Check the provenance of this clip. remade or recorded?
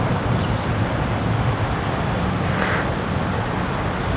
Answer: remade